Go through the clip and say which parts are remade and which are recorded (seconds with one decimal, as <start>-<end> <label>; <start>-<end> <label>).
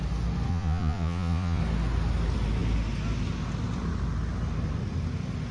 0.0-0.5 recorded; 0.5-1.6 remade; 1.6-5.5 recorded